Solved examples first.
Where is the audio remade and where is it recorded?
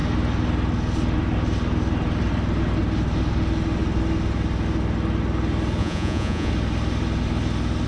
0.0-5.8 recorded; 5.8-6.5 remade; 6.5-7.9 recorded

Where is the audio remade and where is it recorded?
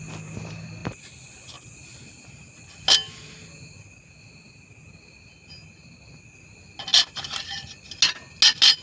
0.0-8.8 recorded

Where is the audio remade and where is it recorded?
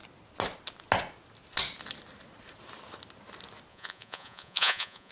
0.0-3.7 recorded; 3.7-5.1 remade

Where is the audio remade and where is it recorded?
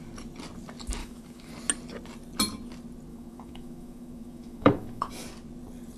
0.0-1.0 recorded; 1.0-1.5 remade; 1.5-3.1 recorded; 3.1-5.1 remade; 5.1-6.0 recorded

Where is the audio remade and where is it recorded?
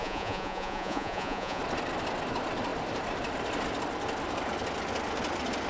0.0-1.6 remade; 1.6-5.7 recorded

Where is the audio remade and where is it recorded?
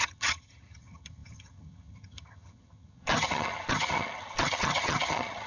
0.0-5.5 remade